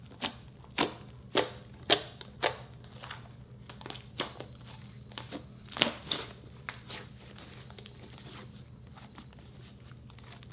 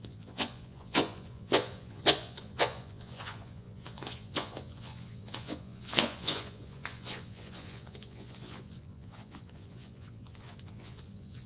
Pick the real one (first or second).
first